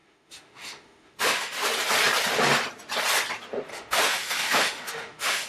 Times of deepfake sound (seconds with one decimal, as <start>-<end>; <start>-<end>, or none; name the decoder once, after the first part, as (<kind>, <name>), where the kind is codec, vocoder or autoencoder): 0.0-1.7 (autoencoder, DAC-VAE); 3.7-5.5